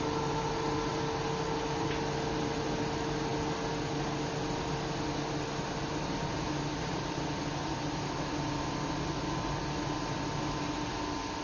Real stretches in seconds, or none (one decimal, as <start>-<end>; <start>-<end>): 0.0-11.4